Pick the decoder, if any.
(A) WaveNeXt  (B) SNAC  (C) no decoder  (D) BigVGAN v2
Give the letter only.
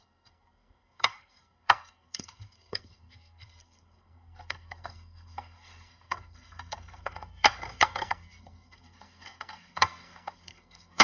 B